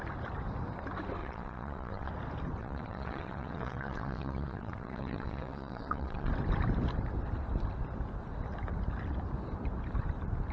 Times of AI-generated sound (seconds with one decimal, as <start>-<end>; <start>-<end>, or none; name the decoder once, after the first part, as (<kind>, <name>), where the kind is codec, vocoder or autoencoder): 1.2-2.1 (vocoder, WaveNeXt); 2.6-6.3